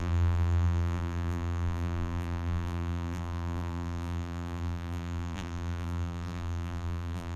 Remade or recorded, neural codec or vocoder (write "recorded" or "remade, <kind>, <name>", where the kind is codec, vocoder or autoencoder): remade, vocoder, BigVGAN v2